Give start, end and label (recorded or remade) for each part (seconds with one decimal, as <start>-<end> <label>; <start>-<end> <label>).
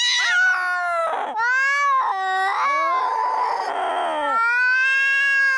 0.0-5.6 recorded